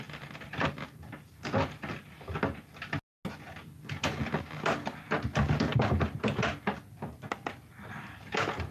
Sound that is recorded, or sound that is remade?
recorded